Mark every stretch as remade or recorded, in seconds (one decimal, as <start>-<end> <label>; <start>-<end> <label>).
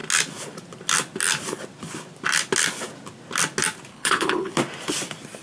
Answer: 0.0-3.9 recorded; 3.9-4.5 remade; 4.5-5.4 recorded